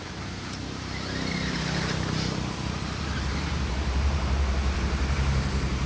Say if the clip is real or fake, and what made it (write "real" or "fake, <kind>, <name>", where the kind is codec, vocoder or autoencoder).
fake, vocoder, BigVGAN v2